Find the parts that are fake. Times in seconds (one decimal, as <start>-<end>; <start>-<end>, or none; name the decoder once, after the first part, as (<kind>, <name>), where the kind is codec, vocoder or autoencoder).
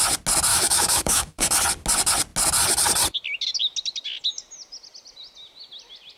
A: 0.5-1.4 (autoencoder, DAC-VAE)